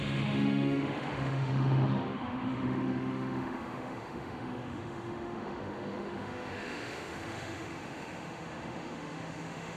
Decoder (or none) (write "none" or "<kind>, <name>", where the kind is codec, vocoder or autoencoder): autoencoder, DAC-VAE